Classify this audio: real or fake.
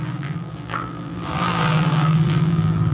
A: fake